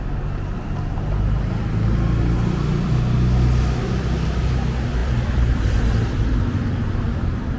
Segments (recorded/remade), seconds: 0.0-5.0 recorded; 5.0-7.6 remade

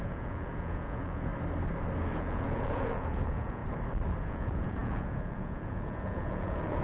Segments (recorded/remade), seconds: 0.0-1.3 remade; 1.3-2.0 recorded; 2.0-3.6 remade; 3.6-4.2 recorded; 4.2-6.8 remade

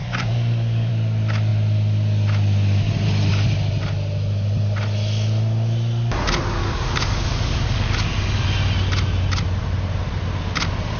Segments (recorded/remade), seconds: 0.0-0.9 remade; 0.9-6.6 recorded; 6.6-8.1 remade; 8.1-11.0 recorded

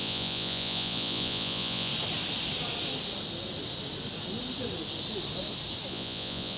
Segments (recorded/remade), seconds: 0.0-1.9 remade; 1.9-5.9 recorded; 5.9-6.6 remade

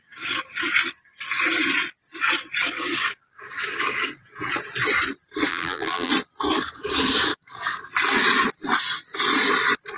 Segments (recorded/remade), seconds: 0.0-5.5 recorded; 5.5-6.1 remade; 6.1-10.0 recorded

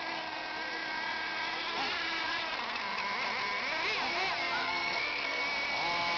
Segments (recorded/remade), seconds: 0.0-4.6 recorded; 4.6-5.4 remade; 5.4-6.2 recorded

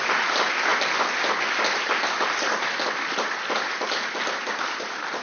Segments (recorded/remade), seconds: 0.0-5.2 recorded

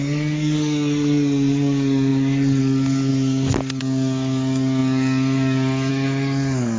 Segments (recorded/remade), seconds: 0.0-3.1 remade; 3.1-3.8 recorded; 3.8-6.8 remade